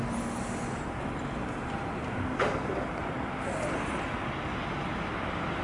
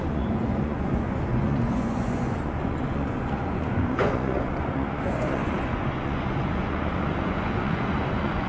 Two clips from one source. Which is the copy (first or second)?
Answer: second